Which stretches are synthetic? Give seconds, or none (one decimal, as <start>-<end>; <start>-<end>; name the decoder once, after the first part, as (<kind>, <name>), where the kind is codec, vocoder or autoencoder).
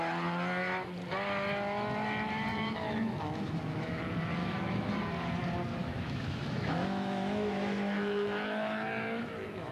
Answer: 2.5-4.0 (autoencoder, DAC-VAE); 4.4-4.9; 5.8-9.7